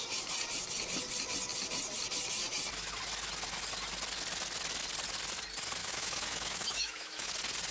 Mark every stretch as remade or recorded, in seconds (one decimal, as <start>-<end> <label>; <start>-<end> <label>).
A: 0.0-5.8 recorded; 5.8-7.3 remade; 7.3-7.7 recorded